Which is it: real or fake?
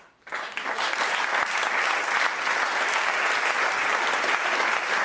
real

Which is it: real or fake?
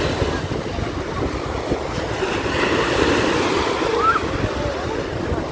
real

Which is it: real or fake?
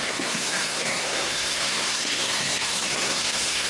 fake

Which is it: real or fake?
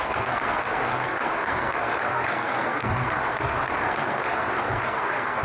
fake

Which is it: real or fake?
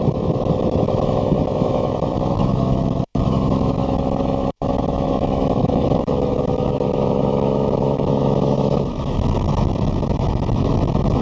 fake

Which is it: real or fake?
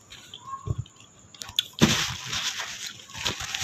real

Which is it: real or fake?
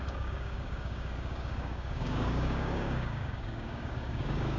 fake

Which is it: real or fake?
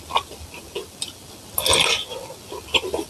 real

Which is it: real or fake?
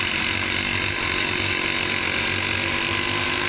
real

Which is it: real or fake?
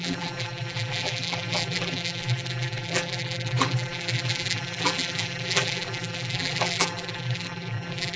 fake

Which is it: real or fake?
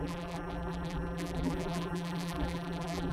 fake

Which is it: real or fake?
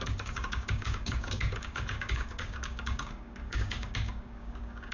fake